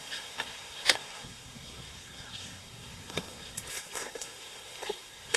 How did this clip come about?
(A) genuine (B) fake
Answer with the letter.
B